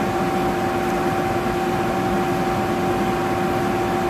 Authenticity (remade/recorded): recorded